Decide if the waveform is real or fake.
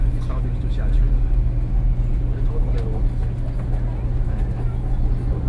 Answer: real